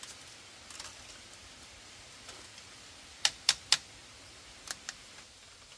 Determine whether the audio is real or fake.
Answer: real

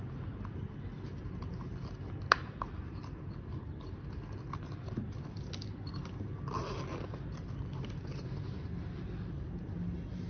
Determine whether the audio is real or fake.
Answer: real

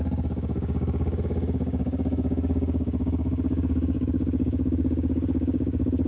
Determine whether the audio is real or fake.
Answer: fake